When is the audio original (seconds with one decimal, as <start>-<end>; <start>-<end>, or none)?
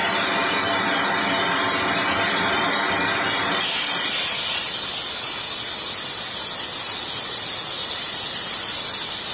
0.0-9.3